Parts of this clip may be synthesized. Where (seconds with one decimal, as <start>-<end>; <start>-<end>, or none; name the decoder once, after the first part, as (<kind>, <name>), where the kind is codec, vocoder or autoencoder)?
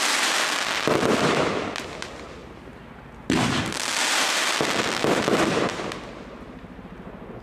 none